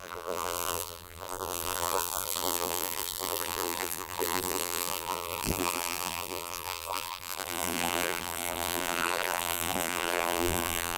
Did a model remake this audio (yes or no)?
yes